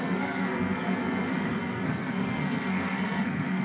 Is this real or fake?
fake